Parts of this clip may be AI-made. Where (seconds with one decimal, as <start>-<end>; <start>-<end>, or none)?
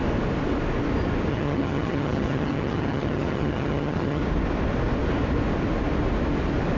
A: 1.3-4.2